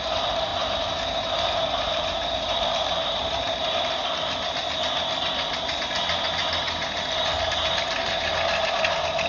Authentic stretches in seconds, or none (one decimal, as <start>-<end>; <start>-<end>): 0.0-0.5; 3.6-9.3